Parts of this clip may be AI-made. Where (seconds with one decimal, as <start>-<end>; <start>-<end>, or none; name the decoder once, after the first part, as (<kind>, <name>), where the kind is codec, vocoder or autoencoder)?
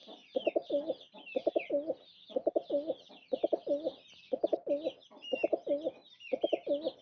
none